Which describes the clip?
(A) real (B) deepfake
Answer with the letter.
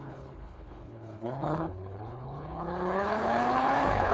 B